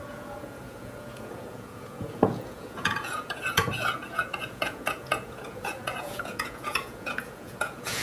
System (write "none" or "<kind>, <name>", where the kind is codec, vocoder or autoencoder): vocoder, Vocos